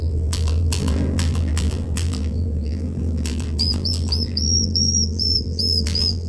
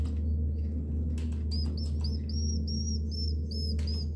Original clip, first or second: second